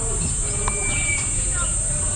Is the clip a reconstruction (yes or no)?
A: no